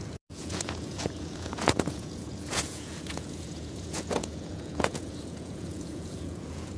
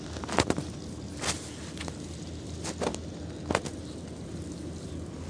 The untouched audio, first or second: second